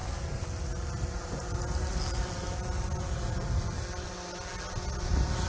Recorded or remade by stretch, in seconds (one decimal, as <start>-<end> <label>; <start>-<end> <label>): 0.0-5.5 recorded